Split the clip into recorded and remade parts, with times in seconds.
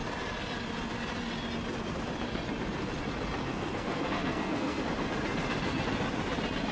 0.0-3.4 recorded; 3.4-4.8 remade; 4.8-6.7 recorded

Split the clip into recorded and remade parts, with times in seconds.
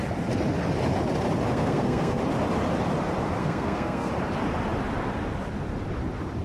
0.0-1.5 recorded; 1.5-2.2 remade; 2.2-3.4 recorded; 3.4-4.1 remade; 4.1-6.4 recorded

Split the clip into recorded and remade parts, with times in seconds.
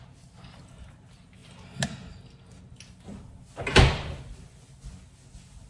0.0-5.7 recorded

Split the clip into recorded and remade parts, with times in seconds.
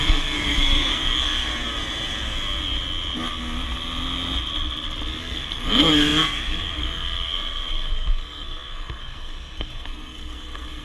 0.0-1.5 remade; 1.5-5.2 recorded; 5.2-10.8 remade